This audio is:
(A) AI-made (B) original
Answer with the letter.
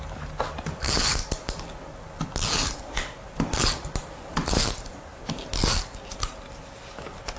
B